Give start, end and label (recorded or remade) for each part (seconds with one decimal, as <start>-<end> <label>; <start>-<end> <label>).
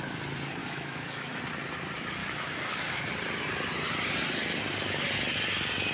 0.0-0.6 recorded; 0.6-1.4 remade; 1.4-2.2 recorded; 2.2-3.0 remade; 3.0-5.9 recorded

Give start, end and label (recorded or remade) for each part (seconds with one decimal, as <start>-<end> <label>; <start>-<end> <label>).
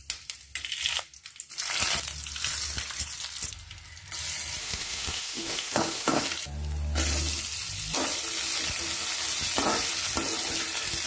0.0-4.6 recorded; 4.6-6.2 remade; 6.2-11.1 recorded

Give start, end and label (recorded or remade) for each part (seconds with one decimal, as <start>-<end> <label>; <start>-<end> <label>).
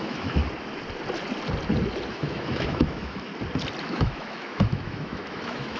0.0-0.4 remade; 0.4-2.1 recorded; 2.1-3.3 remade; 3.3-3.8 recorded; 3.8-5.8 remade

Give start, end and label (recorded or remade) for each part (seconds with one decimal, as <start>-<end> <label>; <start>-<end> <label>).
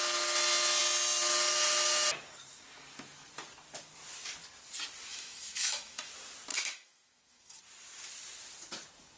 0.0-5.1 recorded; 5.1-6.1 remade; 6.1-6.5 recorded; 6.5-7.6 remade; 7.6-9.2 recorded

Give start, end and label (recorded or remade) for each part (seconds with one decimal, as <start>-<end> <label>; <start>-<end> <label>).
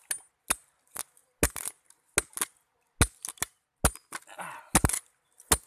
0.0-5.7 recorded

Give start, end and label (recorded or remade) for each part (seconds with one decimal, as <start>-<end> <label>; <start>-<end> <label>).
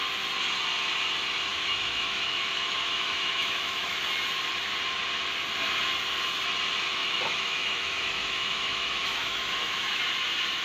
0.0-1.5 recorded; 1.5-4.0 remade; 4.0-7.0 recorded; 7.0-10.0 remade; 10.0-10.6 recorded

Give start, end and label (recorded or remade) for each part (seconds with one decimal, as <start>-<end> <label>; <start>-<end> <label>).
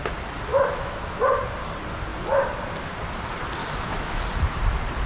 0.0-0.5 recorded; 0.5-1.2 remade; 1.2-3.6 recorded; 3.6-4.2 remade; 4.2-5.1 recorded